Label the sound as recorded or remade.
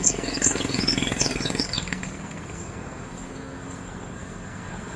remade